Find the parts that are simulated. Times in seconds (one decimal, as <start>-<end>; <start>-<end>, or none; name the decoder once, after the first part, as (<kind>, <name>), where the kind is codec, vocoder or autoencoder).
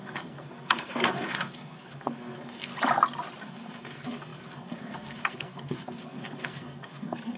0.0-2.7 (codec, SNAC); 3.4-7.4